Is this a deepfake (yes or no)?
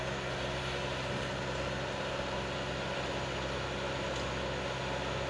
no